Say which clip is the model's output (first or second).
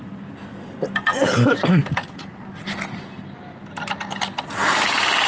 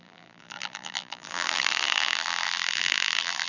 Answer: second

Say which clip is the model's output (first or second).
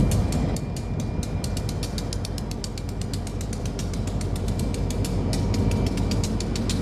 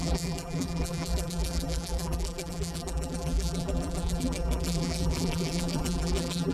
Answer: second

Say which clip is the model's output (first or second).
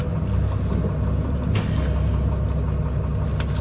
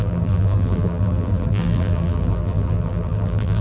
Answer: second